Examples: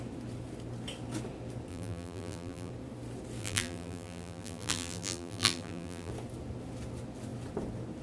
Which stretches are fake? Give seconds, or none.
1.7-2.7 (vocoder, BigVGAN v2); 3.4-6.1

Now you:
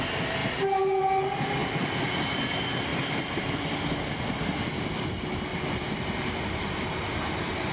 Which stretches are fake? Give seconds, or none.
2.9-3.5 (vocoder, BigVGAN v2); 5.5-7.3

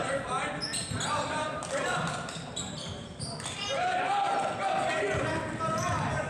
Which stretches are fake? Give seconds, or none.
2.8-4.3 (vocoder, BigVGAN v2)

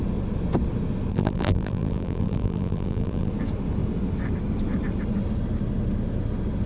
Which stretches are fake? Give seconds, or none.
1.1-3.3 (vocoder, BigVGAN v2)

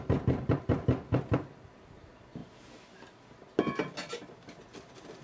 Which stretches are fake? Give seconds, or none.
none

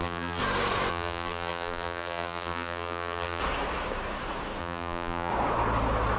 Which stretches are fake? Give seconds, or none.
0.0-0.4 (vocoder, BigVGAN v2); 0.9-3.4; 4.6-5.3